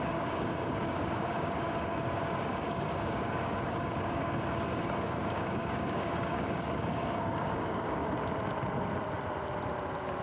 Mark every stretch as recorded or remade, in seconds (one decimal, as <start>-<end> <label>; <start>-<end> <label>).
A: 0.0-8.0 remade; 8.0-10.2 recorded